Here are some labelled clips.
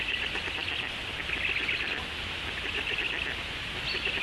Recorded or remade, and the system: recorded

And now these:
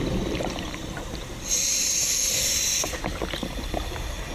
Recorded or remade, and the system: recorded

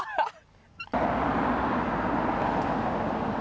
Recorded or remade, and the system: recorded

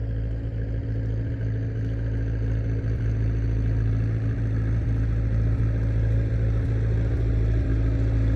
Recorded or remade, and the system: recorded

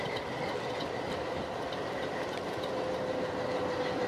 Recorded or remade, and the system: recorded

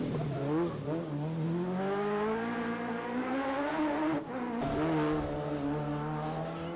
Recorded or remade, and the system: recorded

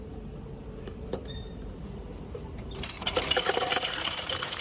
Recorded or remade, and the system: remade, vocoder, BigVGAN v2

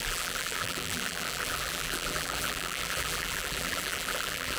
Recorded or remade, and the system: remade, vocoder, BigVGAN v2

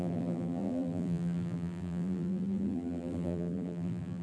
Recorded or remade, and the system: remade, vocoder, BigVGAN v2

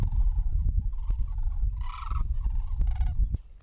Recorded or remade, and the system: recorded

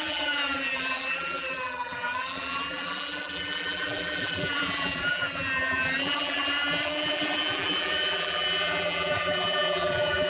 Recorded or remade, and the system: remade, vocoder, BigVGAN v2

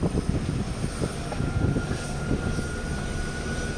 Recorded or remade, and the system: recorded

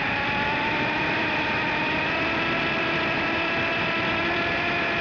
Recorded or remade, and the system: remade, vocoder, BigVGAN v2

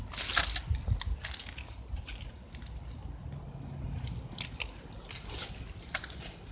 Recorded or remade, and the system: recorded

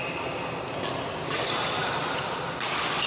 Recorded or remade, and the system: recorded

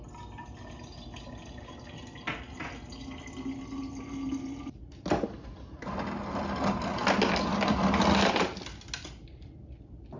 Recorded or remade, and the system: recorded